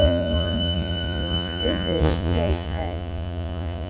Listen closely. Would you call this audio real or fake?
fake